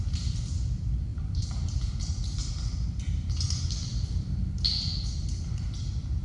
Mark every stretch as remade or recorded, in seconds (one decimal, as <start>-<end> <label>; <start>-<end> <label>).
0.0-1.1 recorded; 1.1-1.9 remade; 1.9-6.2 recorded

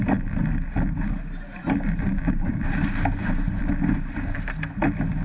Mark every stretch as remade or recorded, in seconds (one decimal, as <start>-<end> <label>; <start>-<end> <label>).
0.0-1.6 recorded; 1.6-3.6 remade; 3.6-5.2 recorded